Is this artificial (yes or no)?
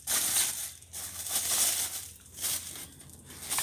no